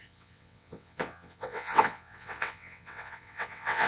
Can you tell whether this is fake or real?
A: fake